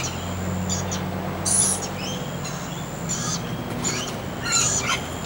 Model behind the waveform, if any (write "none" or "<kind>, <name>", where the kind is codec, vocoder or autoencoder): none